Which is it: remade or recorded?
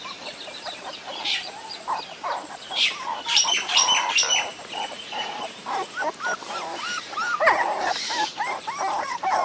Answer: remade